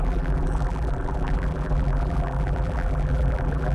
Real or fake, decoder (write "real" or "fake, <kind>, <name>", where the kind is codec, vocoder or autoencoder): fake, vocoder, BigVGAN v2